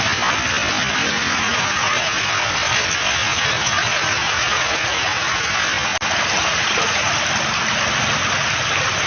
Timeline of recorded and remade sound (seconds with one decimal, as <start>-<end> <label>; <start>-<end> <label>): 0.0-1.0 recorded; 1.0-2.2 remade; 2.2-3.2 recorded; 3.2-5.5 remade; 5.5-6.5 recorded; 6.5-7.1 remade; 7.1-9.1 recorded